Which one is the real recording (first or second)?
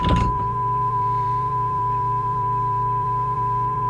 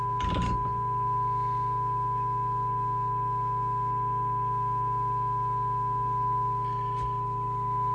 second